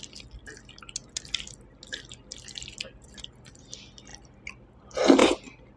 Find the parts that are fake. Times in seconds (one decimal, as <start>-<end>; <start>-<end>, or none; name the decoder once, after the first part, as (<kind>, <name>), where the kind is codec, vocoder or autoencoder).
none